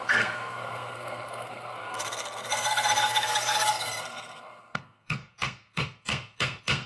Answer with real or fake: fake